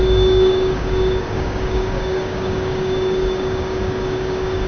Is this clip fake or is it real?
fake